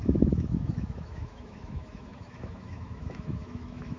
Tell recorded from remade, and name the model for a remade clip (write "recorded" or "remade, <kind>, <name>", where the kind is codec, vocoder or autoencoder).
remade, autoencoder, DAC-VAE